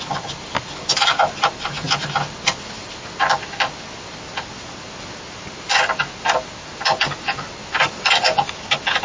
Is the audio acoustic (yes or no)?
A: yes